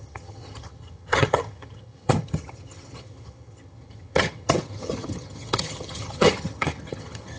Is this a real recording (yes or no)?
no